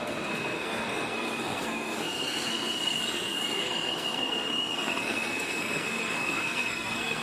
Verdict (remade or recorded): remade